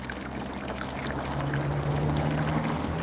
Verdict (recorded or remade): recorded